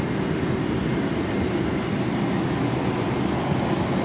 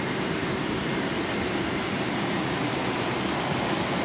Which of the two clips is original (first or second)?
first